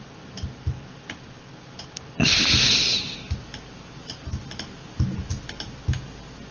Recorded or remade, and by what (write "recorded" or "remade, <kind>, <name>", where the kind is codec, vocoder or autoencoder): recorded